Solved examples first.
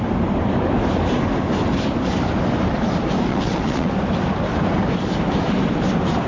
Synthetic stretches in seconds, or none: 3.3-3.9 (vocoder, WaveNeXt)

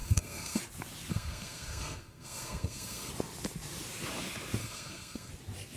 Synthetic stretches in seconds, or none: 0.0-0.6 (codec, SNAC); 1.1-3.1; 4.6-5.3

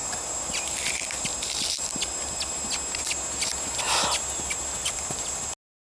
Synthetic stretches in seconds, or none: 0.0-2.5 (vocoder, BigVGAN v2); 4.8-5.4

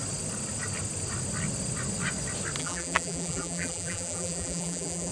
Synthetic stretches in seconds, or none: 2.6-5.1 (vocoder, BigVGAN v2)